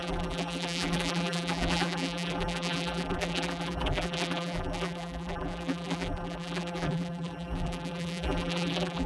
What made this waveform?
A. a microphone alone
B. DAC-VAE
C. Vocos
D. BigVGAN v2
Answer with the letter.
D